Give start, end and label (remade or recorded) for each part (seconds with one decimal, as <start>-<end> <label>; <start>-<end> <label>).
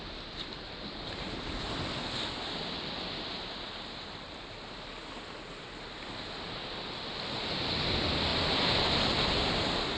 0.0-10.0 recorded